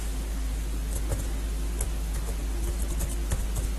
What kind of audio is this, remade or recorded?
recorded